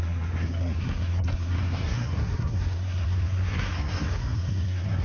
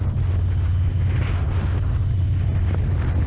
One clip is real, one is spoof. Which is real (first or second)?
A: second